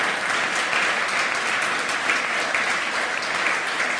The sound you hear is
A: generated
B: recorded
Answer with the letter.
B